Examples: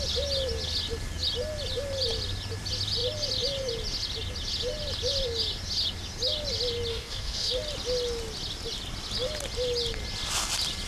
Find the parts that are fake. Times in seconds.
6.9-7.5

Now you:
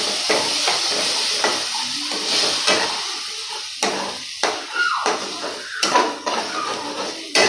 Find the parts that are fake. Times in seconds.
none

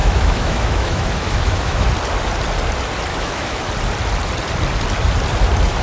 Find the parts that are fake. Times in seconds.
0.0-1.9; 3.1-3.7